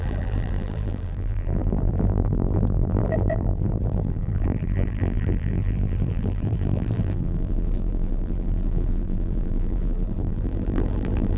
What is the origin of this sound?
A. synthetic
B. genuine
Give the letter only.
A